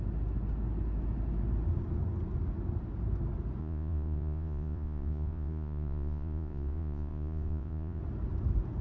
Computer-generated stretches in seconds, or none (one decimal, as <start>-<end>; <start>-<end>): 3.6-8.0